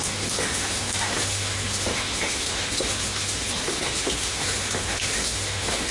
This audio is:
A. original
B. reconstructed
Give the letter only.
B